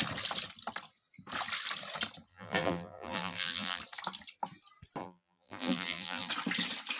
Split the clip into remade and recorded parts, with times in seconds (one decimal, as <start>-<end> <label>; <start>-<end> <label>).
0.0-2.3 recorded; 2.3-3.8 remade; 3.8-5.0 recorded; 5.0-6.3 remade; 6.3-7.0 recorded